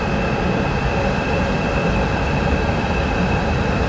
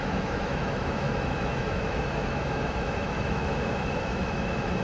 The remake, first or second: second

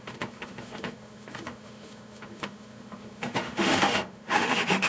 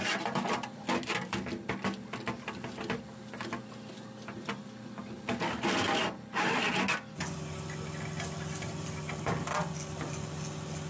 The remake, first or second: first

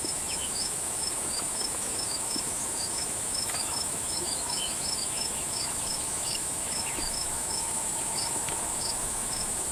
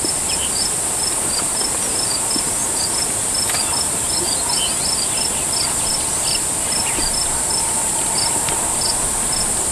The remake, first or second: first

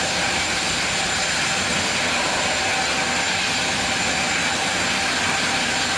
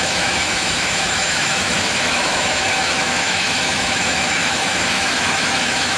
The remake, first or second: second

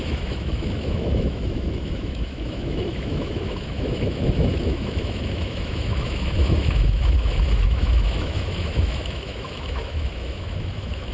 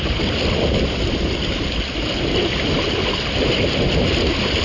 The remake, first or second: first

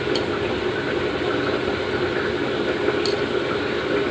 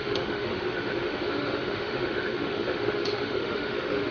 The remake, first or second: second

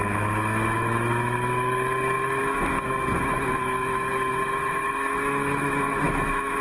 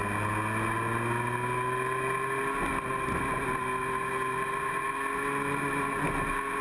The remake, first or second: first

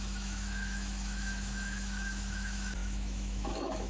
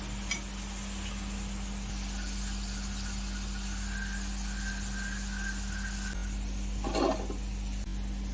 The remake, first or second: first